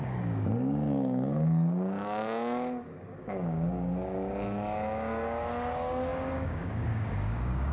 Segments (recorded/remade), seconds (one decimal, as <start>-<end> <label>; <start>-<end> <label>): 0.0-7.7 remade